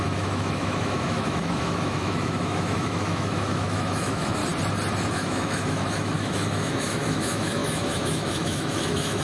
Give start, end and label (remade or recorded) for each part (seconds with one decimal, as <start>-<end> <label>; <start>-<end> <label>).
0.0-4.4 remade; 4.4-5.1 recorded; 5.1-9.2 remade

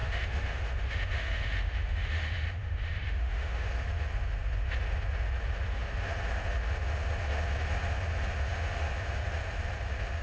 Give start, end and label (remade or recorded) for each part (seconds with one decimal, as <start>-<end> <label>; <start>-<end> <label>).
0.0-3.7 remade; 3.7-10.2 recorded

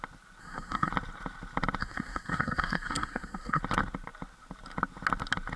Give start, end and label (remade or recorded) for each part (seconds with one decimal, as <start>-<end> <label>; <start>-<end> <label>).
0.0-0.4 recorded; 0.4-0.9 remade; 0.9-1.8 recorded; 1.8-3.6 remade; 3.6-5.6 recorded

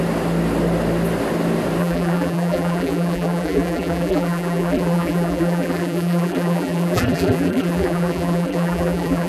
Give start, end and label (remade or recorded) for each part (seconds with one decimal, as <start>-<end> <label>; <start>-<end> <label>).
0.0-1.8 recorded; 1.8-9.3 remade

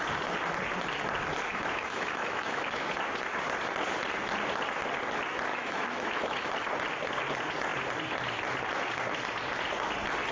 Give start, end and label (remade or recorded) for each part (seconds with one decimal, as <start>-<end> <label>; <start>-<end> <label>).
0.0-1.5 recorded; 1.5-2.9 remade; 2.9-5.5 recorded; 5.5-6.5 remade; 6.5-10.3 recorded